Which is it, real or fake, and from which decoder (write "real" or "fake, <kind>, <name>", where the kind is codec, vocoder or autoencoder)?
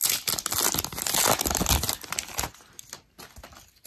real